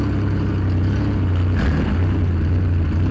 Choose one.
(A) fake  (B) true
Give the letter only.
B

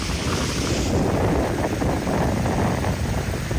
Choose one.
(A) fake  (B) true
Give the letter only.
B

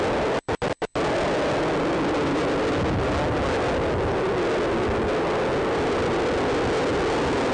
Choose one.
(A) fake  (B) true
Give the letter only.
B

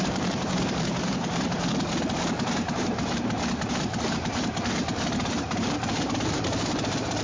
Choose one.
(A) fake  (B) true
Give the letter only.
A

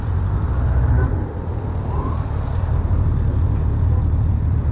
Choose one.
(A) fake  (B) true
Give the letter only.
B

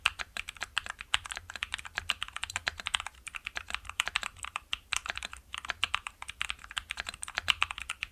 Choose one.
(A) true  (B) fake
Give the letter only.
B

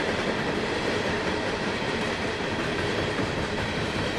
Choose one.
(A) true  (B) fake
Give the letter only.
B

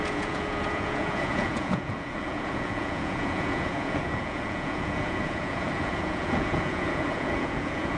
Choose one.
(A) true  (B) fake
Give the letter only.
B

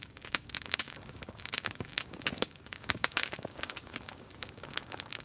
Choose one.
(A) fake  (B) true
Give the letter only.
A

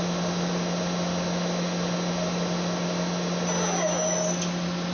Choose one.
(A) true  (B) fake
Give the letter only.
A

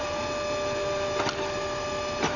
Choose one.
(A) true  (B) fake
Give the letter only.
A